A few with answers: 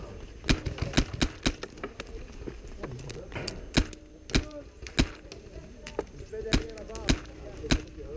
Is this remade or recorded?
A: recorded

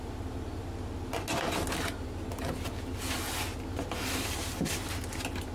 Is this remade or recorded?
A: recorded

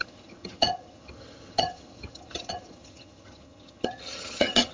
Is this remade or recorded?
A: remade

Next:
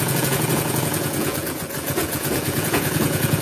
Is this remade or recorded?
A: remade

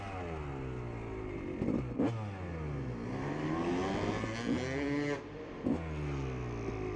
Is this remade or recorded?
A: recorded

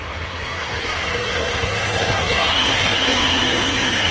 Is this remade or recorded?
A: remade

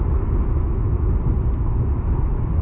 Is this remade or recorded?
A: recorded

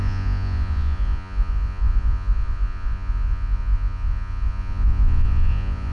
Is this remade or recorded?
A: remade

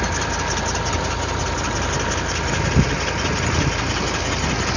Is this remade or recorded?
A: recorded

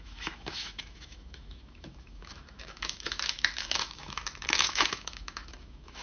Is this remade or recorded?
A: remade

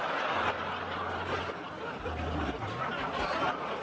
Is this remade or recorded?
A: recorded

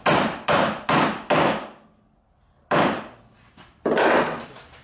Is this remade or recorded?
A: recorded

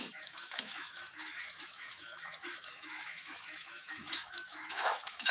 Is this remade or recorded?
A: remade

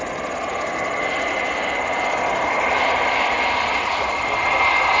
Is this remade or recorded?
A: remade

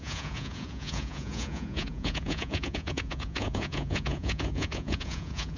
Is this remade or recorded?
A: remade